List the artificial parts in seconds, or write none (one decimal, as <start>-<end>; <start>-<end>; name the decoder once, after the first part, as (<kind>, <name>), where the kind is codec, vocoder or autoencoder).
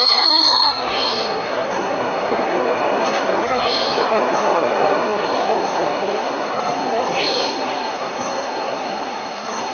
0.0-9.7 (codec, SNAC)